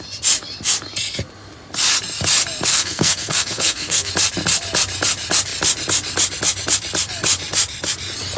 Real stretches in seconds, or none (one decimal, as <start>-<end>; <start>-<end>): 0.0-2.7; 4.1-8.4